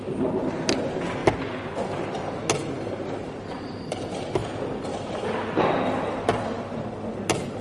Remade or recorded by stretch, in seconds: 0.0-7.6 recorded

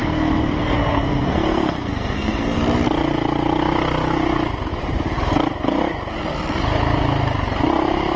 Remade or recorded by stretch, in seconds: 0.0-2.6 remade; 2.6-8.2 recorded

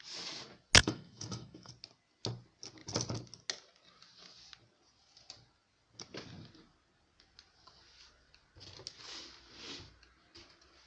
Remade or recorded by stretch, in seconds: 0.0-0.8 recorded; 0.8-1.7 remade; 1.7-10.9 recorded

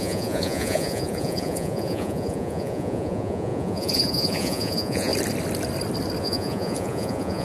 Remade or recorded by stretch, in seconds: 0.0-5.1 remade; 5.1-6.2 recorded; 6.2-7.4 remade

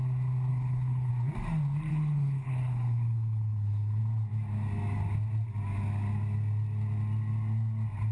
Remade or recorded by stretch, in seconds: 0.0-0.5 recorded; 0.5-1.1 remade; 1.1-1.9 recorded; 1.9-4.0 remade; 4.0-8.1 recorded

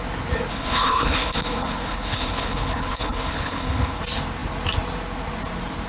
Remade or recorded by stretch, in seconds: 0.0-0.5 recorded; 0.5-4.0 remade; 4.0-5.9 recorded